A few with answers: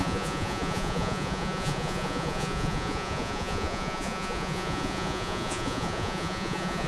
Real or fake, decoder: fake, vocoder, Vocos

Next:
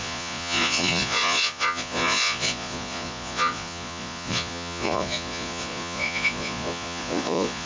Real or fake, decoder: fake, vocoder, Vocos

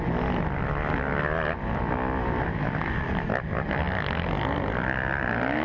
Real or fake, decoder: real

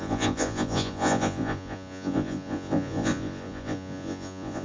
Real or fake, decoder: fake, vocoder, Vocos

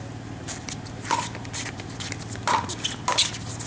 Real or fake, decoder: real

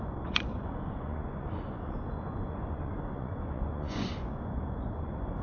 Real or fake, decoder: fake, vocoder, Vocos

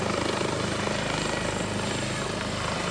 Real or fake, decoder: real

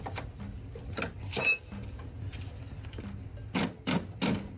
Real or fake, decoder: real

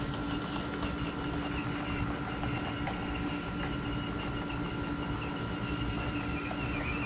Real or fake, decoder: real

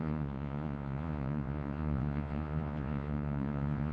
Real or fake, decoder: fake, vocoder, Vocos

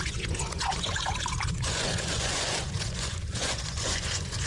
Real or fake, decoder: fake, vocoder, Vocos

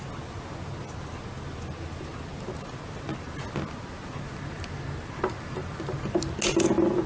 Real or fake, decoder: real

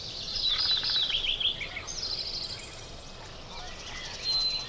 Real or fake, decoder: real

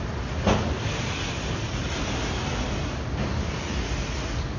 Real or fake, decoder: real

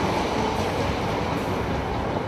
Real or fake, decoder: real